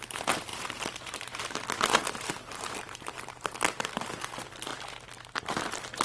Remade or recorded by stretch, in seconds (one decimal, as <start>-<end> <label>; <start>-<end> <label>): 0.0-4.7 remade; 4.7-5.4 recorded; 5.4-6.0 remade